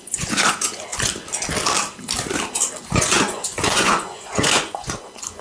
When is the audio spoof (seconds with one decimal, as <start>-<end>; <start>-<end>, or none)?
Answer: 0.0-0.9; 2.8-5.4